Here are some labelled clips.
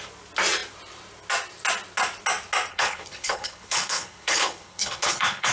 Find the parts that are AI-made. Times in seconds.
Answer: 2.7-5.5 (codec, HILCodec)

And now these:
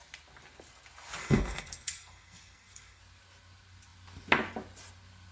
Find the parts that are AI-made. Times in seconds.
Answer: 1.2-3.0 (codec, SNAC)

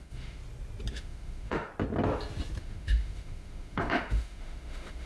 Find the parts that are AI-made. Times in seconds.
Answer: 0.0-0.4 (autoencoder, DAC-VAE); 0.9-1.7; 2.6-5.1

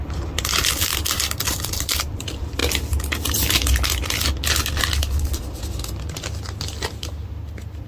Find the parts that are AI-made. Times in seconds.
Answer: 0.0-0.9 (vocoder, BigVGAN v2); 2.0-2.6; 6.6-7.9

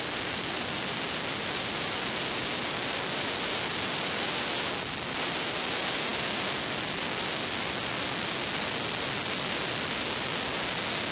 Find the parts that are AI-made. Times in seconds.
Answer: none

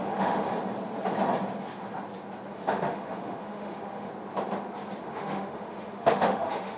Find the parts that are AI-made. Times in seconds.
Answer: 0.0-0.5 (autoencoder, DAC-VAE); 2.5-4.1; 5.0-6.8

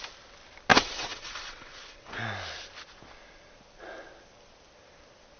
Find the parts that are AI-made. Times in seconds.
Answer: 0.7-2.1 (vocoder, WaveNeXt)